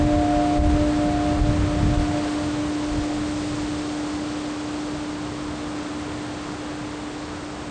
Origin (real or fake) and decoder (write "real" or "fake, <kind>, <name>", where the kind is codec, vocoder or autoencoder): real